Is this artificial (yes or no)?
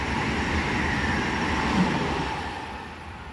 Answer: yes